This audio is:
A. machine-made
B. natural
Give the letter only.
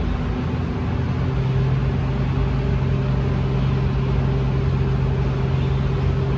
B